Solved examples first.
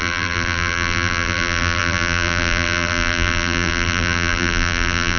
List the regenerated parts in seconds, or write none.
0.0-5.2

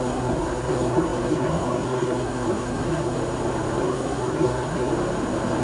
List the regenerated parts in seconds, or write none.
0.0-3.2; 3.8-4.9

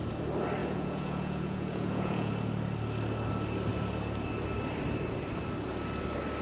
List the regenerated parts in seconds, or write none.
0.6-2.3

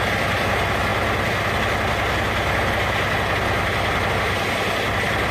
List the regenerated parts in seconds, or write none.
none

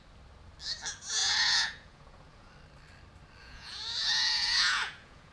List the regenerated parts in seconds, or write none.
1.2-2.5; 3.4-5.3

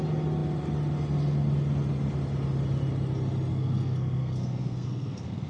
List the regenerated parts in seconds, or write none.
3.5-5.5

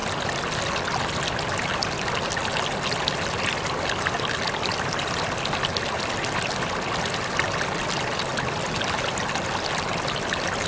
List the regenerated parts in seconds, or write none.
none

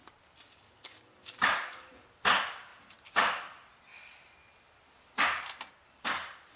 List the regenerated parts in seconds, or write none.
0.4-1.9